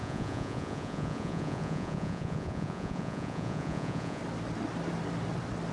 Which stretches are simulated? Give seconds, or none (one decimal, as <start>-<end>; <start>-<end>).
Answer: 0.0-4.2

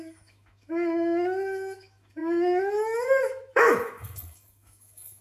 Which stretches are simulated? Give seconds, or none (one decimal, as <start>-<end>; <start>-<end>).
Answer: 0.0-5.2

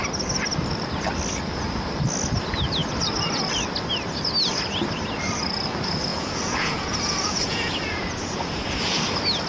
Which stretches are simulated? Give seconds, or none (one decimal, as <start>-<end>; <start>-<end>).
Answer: 6.1-9.0